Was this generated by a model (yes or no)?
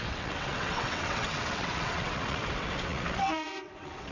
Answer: yes